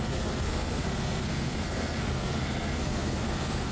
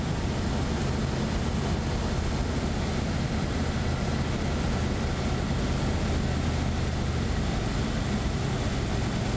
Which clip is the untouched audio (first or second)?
second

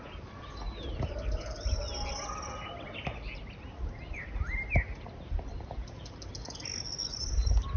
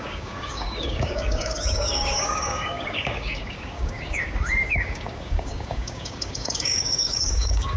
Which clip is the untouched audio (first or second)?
first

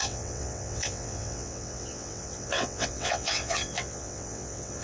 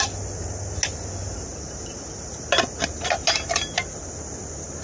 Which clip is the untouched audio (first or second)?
second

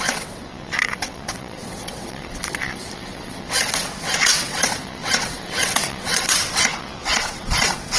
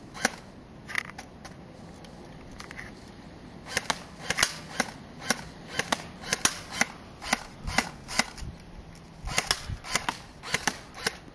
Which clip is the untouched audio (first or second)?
second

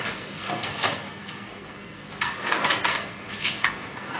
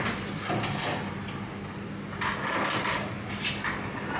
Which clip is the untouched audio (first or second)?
second